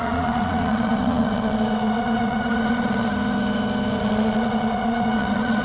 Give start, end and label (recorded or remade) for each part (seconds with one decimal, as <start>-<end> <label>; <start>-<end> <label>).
0.0-3.1 remade; 3.1-4.0 recorded; 4.0-5.6 remade